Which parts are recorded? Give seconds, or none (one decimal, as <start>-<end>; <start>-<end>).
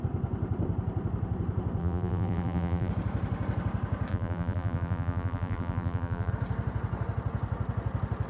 0.0-1.8; 2.9-4.1; 6.3-8.3